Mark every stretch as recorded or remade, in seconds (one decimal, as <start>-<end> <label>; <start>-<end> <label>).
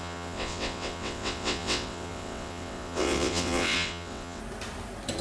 0.0-4.4 remade; 4.4-5.2 recorded